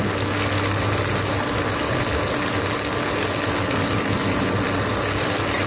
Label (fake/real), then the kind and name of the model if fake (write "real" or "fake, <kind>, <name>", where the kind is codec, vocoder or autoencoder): real